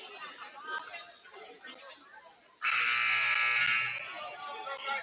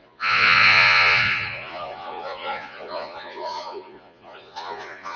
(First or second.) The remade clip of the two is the second